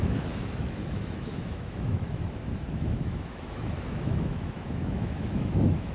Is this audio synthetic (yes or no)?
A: yes